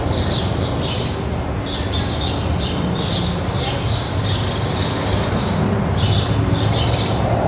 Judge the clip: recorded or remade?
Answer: recorded